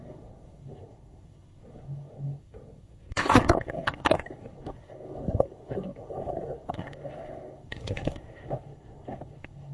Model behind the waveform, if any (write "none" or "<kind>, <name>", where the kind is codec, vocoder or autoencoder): codec, SNAC